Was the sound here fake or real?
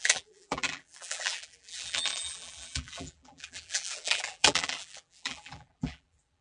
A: fake